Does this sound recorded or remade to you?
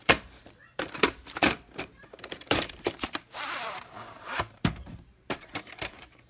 remade